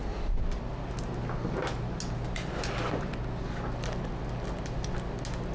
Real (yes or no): yes